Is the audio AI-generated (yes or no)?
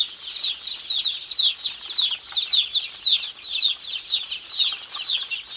no